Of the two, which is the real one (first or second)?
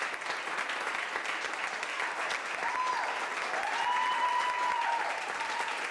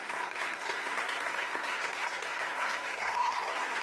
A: first